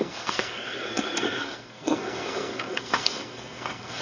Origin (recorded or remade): remade